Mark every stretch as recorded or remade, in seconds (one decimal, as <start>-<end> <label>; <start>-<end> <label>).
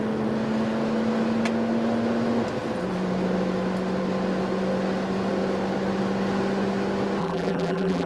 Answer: 0.0-7.2 recorded; 7.2-8.1 remade